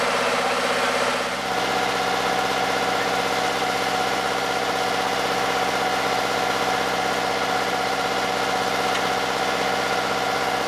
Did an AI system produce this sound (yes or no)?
no